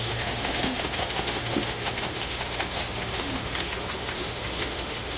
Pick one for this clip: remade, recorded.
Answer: remade